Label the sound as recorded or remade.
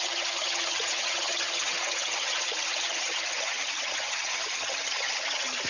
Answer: remade